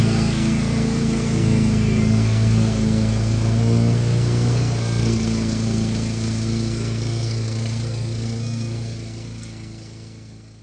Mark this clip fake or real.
fake